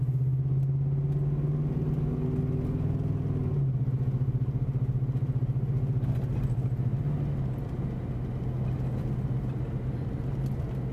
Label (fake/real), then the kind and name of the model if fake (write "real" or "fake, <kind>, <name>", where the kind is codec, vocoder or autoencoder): real